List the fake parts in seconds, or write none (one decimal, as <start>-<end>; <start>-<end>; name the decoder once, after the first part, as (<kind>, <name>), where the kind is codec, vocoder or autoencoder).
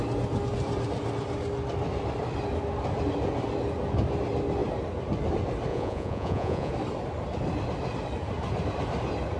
5.7-6.7 (vocoder, Vocos)